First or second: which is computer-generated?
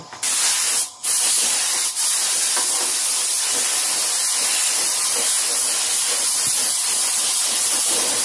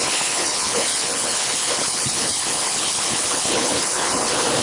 second